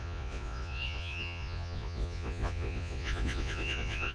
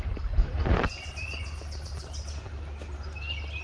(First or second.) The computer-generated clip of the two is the first